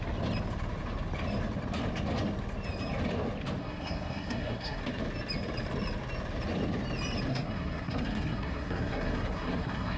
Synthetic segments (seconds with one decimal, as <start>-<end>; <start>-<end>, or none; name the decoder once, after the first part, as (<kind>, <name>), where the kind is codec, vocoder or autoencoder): 3.6-4.8 (codec, SNAC); 7.3-10.0